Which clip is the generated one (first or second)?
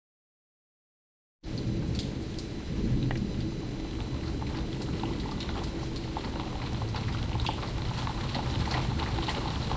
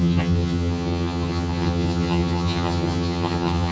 second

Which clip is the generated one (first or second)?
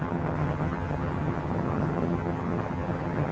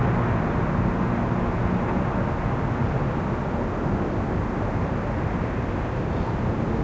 first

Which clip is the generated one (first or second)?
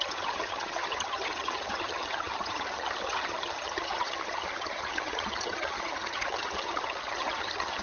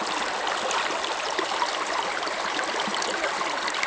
first